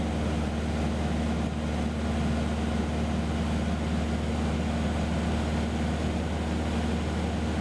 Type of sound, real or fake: real